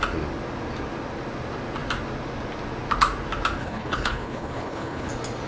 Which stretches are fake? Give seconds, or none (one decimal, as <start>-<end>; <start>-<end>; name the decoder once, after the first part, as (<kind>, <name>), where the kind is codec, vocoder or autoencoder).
3.6-5.1 (codec, HILCodec)